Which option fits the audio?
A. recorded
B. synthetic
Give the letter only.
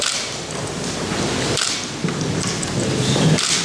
A